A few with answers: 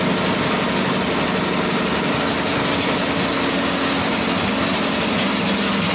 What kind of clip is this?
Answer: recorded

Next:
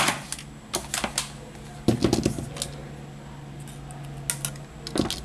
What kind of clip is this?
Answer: recorded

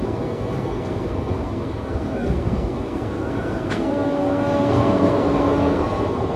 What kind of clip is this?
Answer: remade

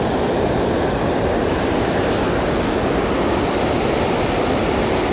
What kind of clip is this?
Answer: recorded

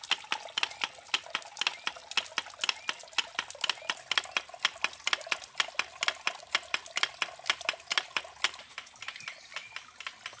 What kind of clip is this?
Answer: recorded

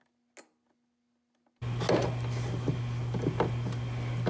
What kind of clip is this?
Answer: recorded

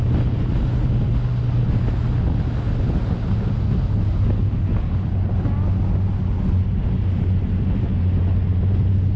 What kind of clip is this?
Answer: recorded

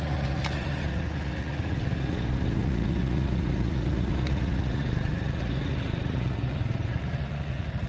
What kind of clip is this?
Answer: remade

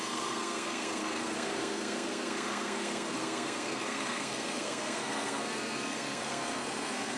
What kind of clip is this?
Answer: remade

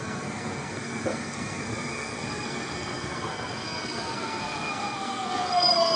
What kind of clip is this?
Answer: remade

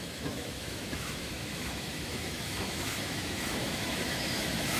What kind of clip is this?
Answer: remade